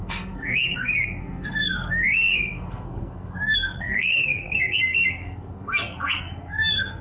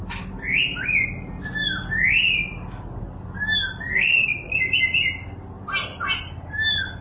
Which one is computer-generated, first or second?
first